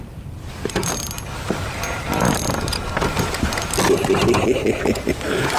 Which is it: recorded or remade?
recorded